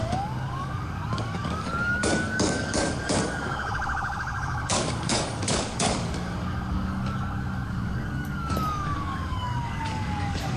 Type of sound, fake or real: fake